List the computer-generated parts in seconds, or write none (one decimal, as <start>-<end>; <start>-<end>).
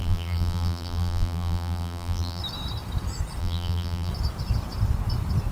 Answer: 0.0-2.4; 3.4-4.1